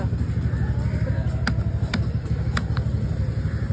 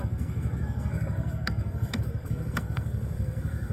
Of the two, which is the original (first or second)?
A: first